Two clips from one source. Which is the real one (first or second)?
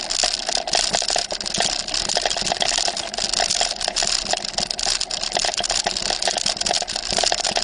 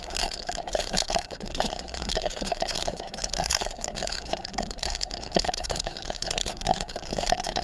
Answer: first